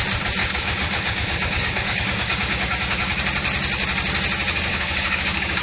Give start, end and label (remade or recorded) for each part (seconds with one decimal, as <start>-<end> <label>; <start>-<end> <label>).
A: 0.0-0.4 recorded; 0.4-3.2 remade; 3.2-4.7 recorded; 4.7-5.6 remade